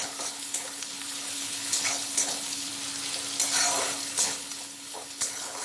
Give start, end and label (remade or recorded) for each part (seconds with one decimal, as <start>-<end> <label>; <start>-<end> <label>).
0.0-2.7 remade; 2.7-3.8 recorded; 3.8-5.6 remade